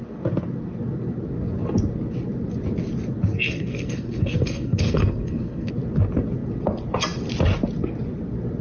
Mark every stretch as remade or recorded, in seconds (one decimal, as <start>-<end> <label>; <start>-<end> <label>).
0.0-3.3 recorded; 3.3-5.7 remade; 5.7-8.6 recorded